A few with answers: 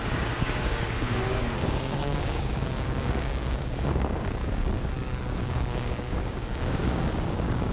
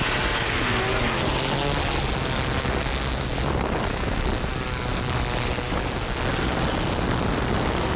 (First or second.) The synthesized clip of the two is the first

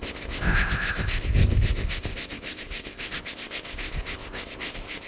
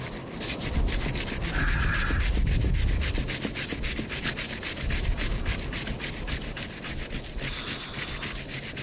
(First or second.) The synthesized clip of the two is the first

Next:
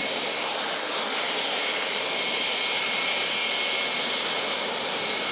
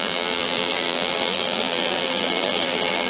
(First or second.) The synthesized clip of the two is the second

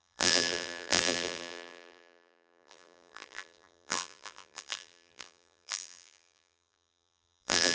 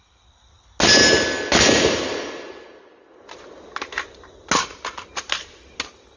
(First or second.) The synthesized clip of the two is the first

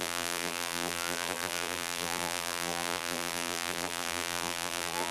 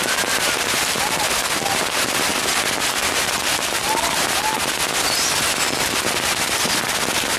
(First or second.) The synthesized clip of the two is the first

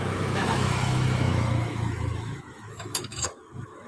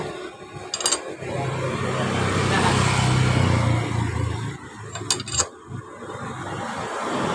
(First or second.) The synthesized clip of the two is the first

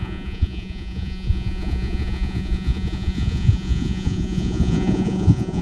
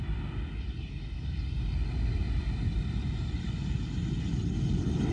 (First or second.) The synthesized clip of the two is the first